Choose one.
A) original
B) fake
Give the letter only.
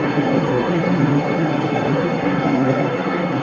B